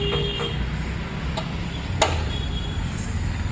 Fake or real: real